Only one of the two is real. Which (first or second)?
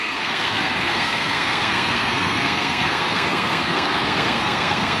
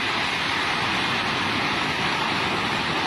second